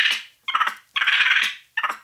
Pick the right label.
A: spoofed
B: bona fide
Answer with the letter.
B